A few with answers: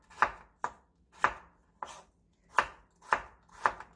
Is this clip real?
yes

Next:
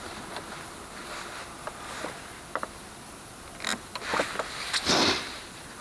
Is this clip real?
yes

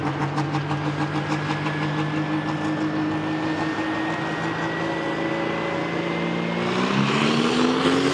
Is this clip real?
yes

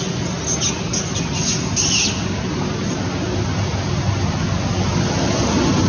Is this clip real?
yes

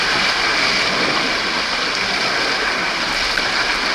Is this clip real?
yes